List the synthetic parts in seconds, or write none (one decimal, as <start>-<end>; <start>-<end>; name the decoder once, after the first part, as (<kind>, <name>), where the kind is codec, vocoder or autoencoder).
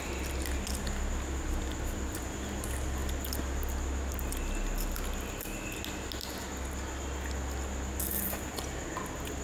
none